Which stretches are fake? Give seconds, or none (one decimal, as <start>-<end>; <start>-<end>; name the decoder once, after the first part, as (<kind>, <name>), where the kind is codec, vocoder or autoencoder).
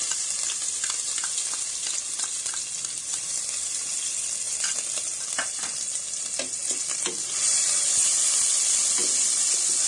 none